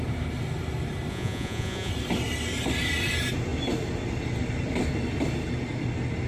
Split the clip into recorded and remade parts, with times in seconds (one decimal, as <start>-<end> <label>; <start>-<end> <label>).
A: 0.0-1.1 recorded; 1.1-1.9 remade; 1.9-6.3 recorded